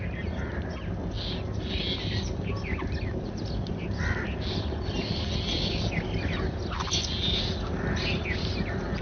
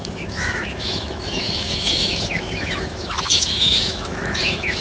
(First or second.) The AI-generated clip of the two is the second